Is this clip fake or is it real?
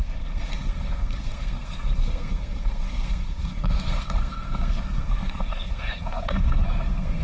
fake